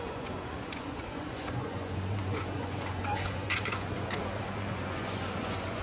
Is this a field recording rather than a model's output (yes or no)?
no